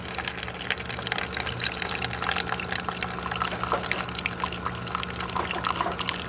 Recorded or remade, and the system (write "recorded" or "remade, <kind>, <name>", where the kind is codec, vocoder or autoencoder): recorded